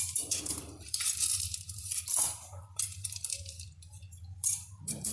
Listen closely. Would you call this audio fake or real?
fake